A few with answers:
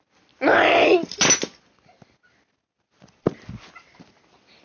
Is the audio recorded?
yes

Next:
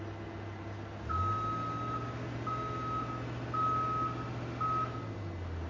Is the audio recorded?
yes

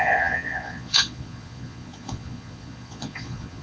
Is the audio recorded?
no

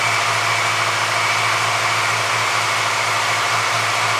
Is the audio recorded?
yes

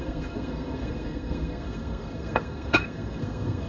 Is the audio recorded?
no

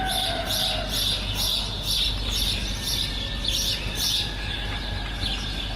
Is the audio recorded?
yes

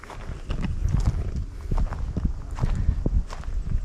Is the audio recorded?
yes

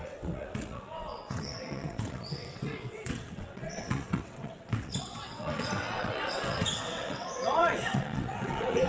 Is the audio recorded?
no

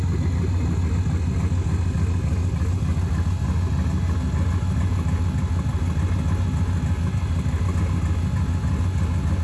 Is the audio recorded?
yes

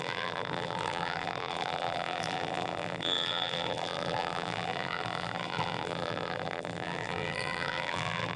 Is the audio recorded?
no